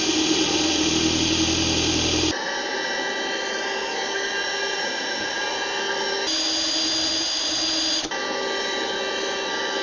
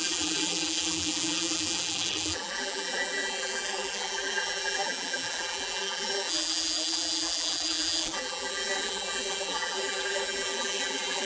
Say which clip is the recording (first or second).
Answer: first